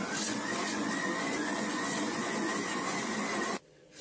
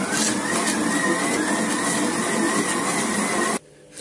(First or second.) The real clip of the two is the second